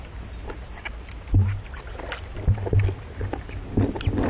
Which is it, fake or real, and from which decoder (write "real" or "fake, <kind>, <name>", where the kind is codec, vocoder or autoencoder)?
real